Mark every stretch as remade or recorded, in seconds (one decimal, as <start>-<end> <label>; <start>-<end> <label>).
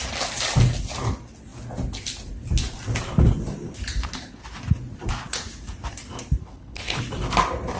0.0-6.4 recorded; 6.4-7.0 remade; 7.0-7.8 recorded